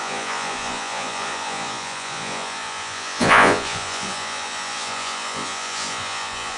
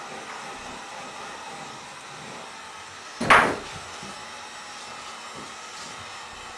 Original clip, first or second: second